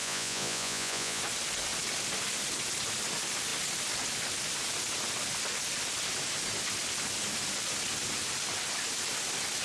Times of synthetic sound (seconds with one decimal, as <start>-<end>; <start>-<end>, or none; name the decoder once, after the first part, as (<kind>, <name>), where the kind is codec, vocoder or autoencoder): 0.0-1.2 (vocoder, Vocos)